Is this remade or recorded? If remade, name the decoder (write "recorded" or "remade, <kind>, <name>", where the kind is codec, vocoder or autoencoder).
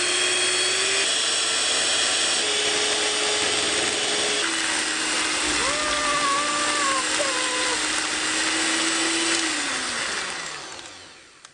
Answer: recorded